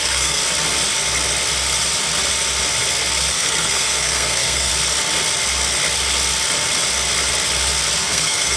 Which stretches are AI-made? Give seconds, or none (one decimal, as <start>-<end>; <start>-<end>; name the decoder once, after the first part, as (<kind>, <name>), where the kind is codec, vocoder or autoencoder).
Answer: 0.0-0.4 (codec, SNAC); 3.3-4.7; 8.0-8.6